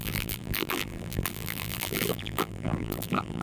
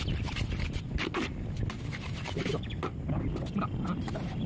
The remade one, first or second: first